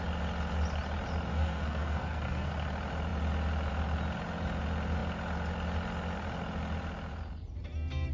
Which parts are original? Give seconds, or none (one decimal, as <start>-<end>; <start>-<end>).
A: 0.0-1.3; 2.5-8.1